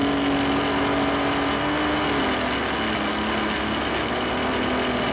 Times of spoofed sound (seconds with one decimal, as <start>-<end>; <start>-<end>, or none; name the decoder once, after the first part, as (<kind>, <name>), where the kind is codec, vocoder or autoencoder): none